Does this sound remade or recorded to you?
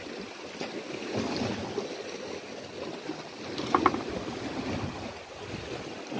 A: recorded